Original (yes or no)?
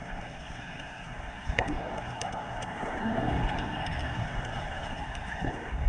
no